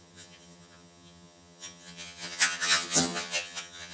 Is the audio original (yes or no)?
no